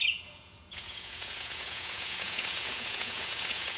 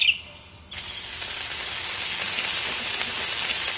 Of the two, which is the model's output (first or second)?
first